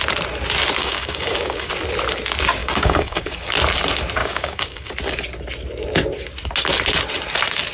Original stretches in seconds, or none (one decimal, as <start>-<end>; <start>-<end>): 0.0-0.8; 1.7-2.6; 3.5-4.2; 4.9-7.7